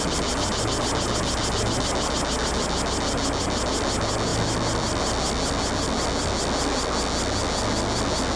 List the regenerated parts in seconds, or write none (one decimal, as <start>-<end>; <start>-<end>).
none